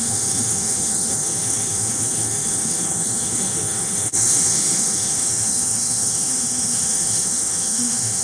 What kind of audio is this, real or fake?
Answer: fake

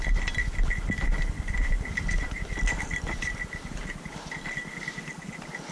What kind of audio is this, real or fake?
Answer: fake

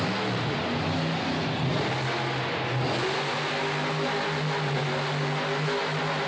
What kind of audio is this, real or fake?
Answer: real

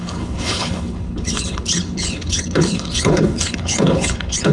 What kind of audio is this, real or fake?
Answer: fake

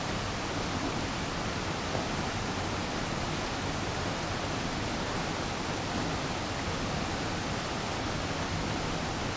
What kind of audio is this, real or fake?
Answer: real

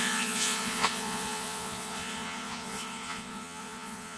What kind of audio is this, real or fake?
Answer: fake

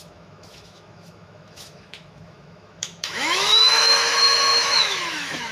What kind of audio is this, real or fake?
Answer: fake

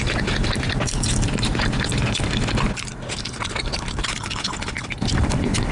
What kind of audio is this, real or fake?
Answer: real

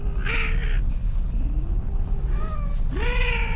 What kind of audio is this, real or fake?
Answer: real